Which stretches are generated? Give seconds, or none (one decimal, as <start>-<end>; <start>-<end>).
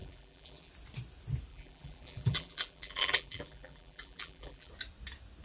0.0-0.7; 1.5-4.7